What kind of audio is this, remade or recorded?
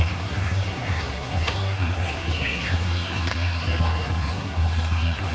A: remade